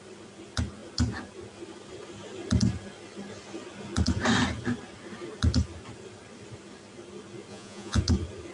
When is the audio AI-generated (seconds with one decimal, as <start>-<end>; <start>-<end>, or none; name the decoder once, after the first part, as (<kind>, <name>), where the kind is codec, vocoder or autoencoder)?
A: 7.5-8.0 (vocoder, Vocos)